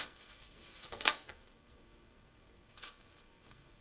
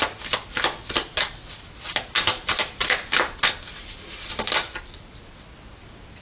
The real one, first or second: second